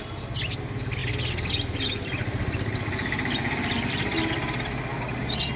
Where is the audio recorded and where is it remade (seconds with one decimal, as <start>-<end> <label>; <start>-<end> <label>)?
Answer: 0.0-5.6 recorded